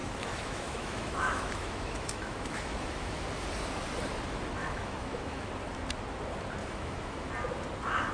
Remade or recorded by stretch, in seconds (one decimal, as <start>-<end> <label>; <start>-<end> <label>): 0.0-3.2 remade; 3.2-4.6 recorded; 4.6-5.5 remade; 5.5-6.6 recorded; 6.6-7.3 remade; 7.3-8.1 recorded